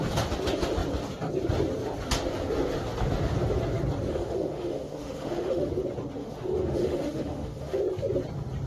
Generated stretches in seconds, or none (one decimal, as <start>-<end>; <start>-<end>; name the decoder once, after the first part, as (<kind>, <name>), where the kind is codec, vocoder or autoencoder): 4.1-5.7 (autoencoder, DAC-VAE); 6.2-7.8